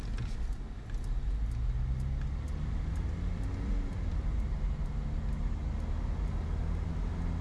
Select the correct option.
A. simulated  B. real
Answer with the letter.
B